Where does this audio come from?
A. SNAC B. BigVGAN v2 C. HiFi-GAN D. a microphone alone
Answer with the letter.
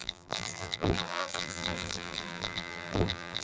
B